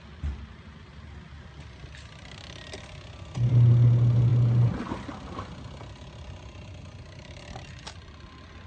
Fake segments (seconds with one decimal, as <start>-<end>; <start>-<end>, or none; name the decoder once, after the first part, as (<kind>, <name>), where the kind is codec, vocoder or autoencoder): none